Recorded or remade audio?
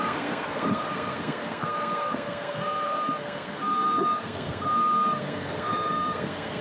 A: remade